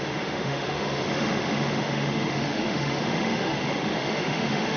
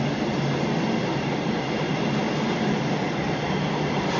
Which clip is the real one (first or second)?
second